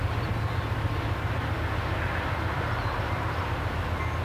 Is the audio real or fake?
real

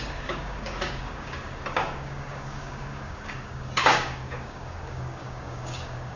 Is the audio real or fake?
fake